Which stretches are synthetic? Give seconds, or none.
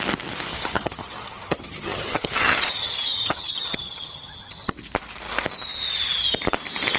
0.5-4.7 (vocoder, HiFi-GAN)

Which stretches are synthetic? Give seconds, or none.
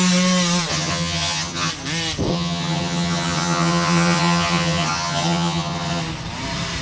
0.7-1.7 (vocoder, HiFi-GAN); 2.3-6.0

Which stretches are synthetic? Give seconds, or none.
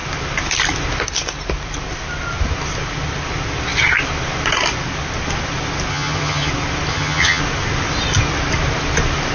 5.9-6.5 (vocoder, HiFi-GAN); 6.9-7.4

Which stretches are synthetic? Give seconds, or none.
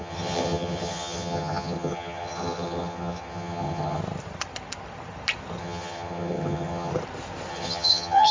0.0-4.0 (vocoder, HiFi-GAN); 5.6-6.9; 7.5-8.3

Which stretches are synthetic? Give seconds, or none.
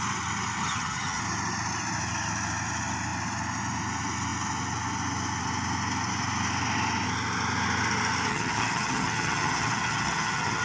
0.6-1.2 (vocoder, HiFi-GAN); 8.3-10.6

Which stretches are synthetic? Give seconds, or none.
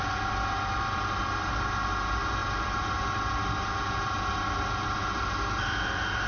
none